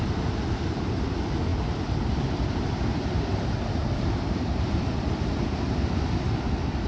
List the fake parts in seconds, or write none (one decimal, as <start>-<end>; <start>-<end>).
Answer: 1.5-5.6